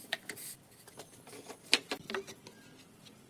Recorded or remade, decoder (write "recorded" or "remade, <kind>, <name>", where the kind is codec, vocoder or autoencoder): recorded